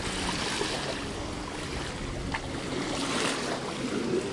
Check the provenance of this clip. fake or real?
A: real